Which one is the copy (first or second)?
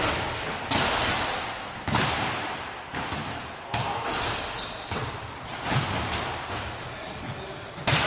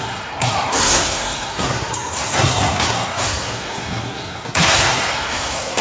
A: second